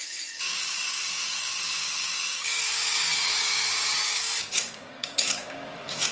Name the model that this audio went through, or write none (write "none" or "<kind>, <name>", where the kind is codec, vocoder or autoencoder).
codec, DAC